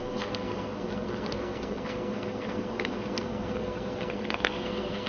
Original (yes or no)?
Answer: no